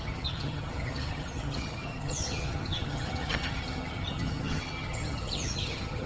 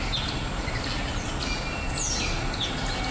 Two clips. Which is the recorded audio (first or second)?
second